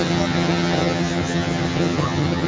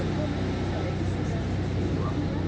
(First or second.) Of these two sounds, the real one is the second